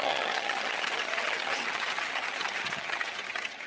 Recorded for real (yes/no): no